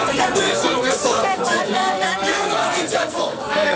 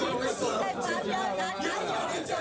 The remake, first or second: first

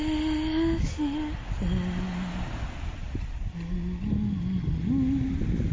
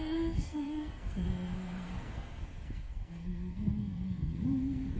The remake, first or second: second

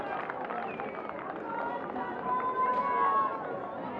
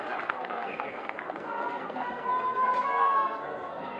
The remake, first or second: second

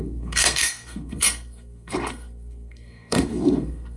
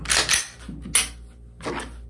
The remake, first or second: first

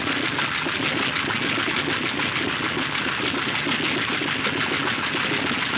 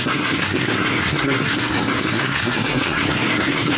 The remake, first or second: second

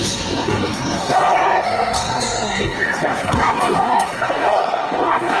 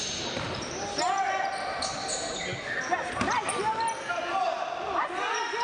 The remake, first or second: first